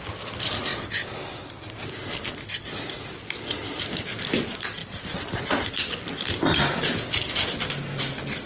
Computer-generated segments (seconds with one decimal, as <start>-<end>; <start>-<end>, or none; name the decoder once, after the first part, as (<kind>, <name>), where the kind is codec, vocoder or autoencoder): none